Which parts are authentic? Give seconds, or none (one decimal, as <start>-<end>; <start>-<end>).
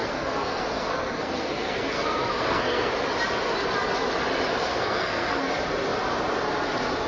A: 2.9-4.7; 5.5-7.1